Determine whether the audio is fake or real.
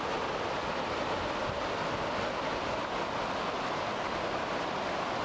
real